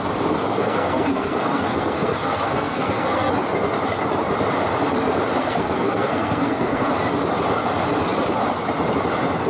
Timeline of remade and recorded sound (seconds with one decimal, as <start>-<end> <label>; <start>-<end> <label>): 0.0-0.4 recorded; 0.4-3.3 remade; 3.3-5.4 recorded; 5.4-6.9 remade; 6.9-9.5 recorded